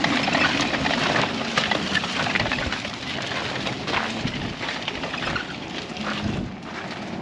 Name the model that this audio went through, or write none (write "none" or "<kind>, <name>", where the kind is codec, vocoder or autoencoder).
none